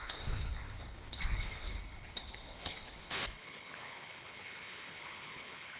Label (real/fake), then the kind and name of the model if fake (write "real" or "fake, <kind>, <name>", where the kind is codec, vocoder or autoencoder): fake, codec, HILCodec